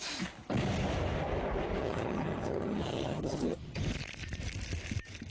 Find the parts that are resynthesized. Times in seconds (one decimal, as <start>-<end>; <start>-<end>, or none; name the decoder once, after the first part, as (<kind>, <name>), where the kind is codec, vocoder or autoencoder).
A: 1.8-3.8 (vocoder, HiFi-GAN)